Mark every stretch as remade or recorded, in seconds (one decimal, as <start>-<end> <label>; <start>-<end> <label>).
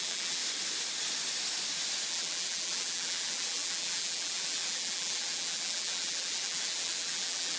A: 0.0-0.4 remade; 0.4-2.1 recorded; 2.1-7.6 remade